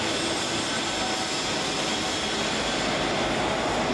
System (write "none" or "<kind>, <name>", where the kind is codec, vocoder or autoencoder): none